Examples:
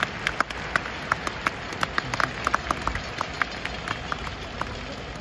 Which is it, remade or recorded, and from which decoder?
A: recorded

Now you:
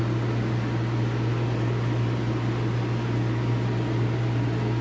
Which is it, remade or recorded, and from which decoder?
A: recorded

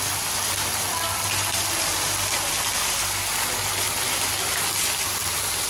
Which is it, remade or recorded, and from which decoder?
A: recorded